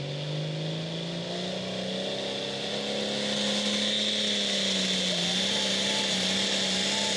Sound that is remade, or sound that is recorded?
recorded